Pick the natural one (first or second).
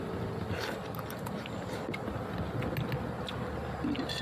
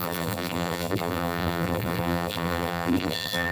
first